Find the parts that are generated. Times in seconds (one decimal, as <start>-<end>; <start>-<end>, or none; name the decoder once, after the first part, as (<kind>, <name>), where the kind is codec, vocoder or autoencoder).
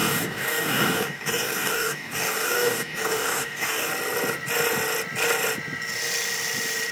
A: 0.0-3.9 (codec, DAC)